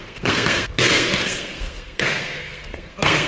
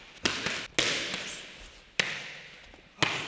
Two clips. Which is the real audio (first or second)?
second